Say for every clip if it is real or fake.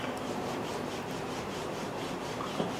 fake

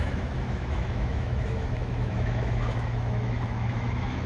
fake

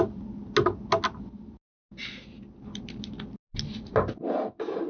real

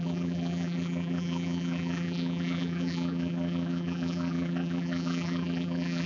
fake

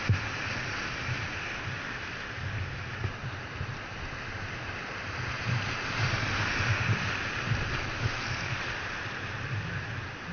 real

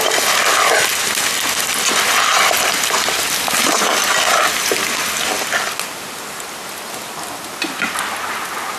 real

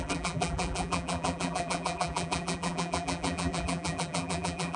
fake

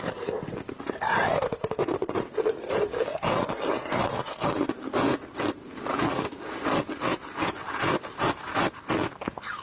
real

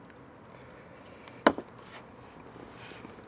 real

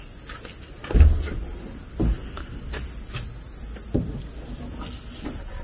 real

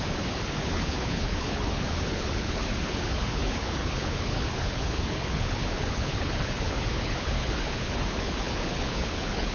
fake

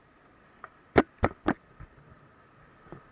real